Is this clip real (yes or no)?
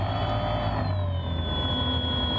yes